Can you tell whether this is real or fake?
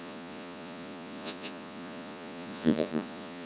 fake